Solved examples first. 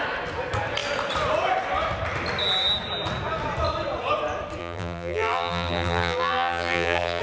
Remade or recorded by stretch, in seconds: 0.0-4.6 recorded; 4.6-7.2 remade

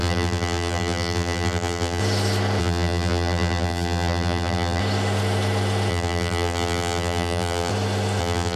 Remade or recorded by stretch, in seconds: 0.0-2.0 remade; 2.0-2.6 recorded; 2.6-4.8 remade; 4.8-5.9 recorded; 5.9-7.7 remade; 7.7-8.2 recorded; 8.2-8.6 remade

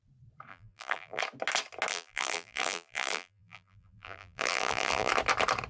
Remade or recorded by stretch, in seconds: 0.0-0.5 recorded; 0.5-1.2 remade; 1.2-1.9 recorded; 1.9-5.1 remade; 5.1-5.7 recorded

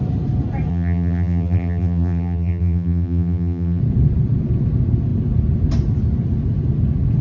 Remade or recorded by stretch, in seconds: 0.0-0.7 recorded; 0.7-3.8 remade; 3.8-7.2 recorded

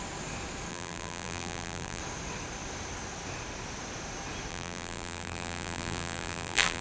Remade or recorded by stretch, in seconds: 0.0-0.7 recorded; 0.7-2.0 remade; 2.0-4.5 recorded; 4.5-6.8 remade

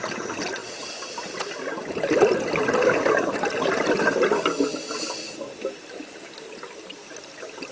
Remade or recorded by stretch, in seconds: 0.0-7.7 recorded